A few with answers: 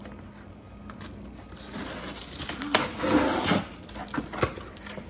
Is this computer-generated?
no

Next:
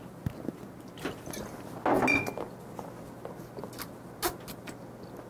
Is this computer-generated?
no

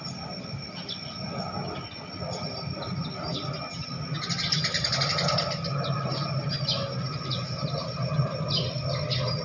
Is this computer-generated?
no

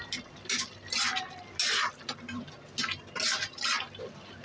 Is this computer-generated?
no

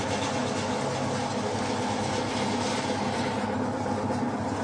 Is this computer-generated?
no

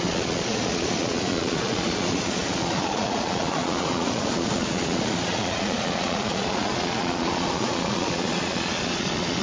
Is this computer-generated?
yes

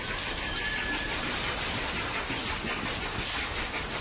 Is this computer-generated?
no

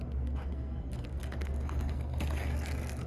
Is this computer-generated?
yes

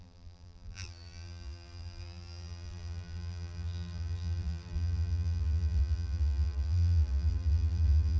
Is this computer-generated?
yes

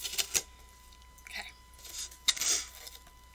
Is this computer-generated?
no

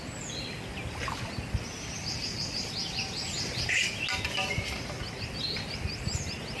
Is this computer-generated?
no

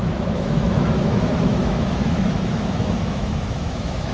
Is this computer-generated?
yes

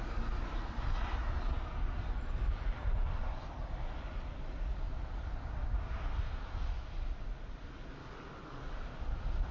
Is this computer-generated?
no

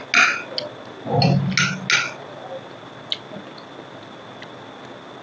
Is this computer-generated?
no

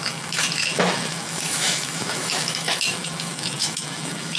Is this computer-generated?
yes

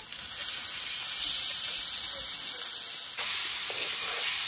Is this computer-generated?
no